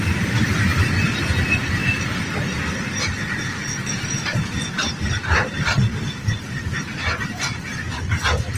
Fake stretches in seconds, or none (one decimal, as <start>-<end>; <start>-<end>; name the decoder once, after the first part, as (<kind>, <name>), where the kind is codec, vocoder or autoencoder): 1.8-3.0 (vocoder, BigVGAN v2); 5.9-6.6